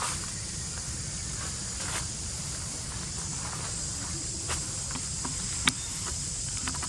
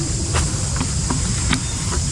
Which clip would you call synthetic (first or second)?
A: first